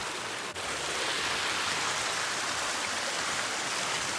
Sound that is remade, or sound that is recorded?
recorded